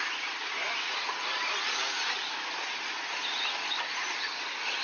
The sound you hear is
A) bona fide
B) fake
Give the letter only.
A